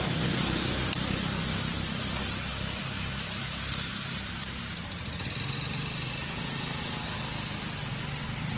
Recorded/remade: recorded